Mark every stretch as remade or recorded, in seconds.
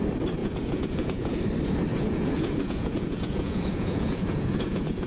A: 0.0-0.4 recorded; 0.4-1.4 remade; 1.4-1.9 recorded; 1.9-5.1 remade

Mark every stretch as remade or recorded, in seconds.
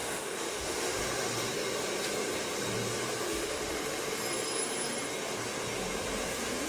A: 0.0-1.0 remade; 1.0-3.4 recorded; 3.4-4.2 remade; 4.2-6.7 recorded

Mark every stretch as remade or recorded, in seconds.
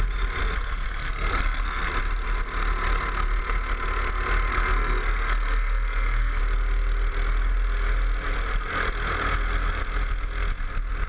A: 0.0-0.4 recorded; 0.4-1.9 remade; 1.9-4.5 recorded; 4.5-6.4 remade; 6.4-11.1 recorded